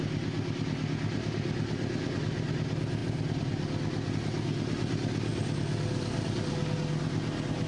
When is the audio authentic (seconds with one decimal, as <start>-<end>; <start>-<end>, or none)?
0.0-5.3; 6.6-7.7